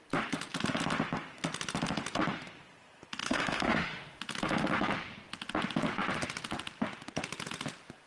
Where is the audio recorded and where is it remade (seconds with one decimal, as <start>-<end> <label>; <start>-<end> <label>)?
0.0-3.2 recorded; 3.2-4.2 remade; 4.2-8.1 recorded